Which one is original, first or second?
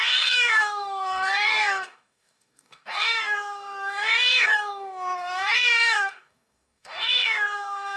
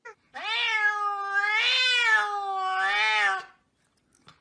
second